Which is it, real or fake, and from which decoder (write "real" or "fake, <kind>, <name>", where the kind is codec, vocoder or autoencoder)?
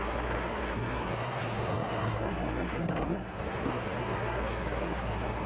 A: fake, codec, SNAC